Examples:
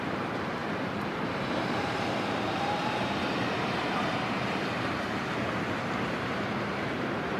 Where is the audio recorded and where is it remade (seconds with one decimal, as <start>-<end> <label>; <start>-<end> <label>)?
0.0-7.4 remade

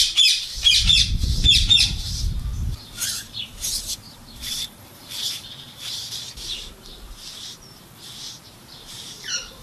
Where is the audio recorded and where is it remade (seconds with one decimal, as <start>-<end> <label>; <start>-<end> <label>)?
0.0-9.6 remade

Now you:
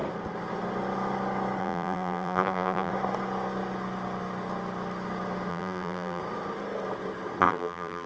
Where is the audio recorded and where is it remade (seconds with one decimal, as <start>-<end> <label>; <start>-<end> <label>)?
0.0-1.6 recorded; 1.6-2.9 remade; 2.9-5.5 recorded; 5.5-6.2 remade; 6.2-7.4 recorded; 7.4-8.1 remade